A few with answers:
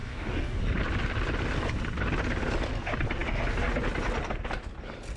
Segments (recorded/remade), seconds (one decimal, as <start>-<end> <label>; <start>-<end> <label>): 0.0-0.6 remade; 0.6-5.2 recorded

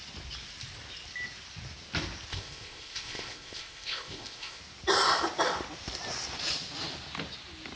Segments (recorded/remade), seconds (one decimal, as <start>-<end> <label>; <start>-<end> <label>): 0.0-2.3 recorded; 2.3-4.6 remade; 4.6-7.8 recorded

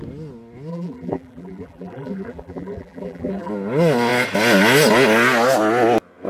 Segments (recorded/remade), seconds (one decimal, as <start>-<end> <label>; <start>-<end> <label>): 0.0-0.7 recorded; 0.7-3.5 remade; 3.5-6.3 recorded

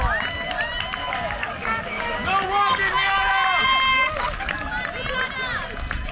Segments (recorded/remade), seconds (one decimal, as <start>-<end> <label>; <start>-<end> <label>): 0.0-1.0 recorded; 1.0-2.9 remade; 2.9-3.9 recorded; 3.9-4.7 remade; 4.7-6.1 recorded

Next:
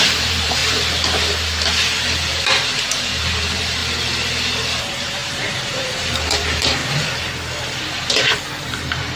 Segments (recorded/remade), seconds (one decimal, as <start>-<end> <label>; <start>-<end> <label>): 0.0-0.6 remade; 0.6-2.3 recorded; 2.3-3.8 remade; 3.8-4.8 recorded; 4.8-6.8 remade; 6.8-7.8 recorded; 7.8-9.2 remade

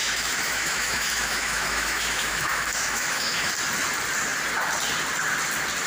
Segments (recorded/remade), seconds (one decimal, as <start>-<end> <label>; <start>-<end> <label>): 0.0-3.5 remade; 3.5-5.9 recorded

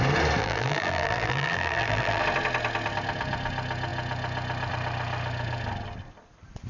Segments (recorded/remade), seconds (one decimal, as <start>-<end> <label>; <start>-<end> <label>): 0.0-0.4 recorded; 0.4-2.2 remade; 2.2-6.7 recorded